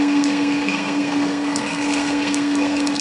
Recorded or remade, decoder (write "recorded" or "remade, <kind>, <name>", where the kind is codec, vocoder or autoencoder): remade, codec, SNAC